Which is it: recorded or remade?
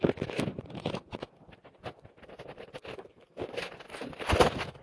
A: recorded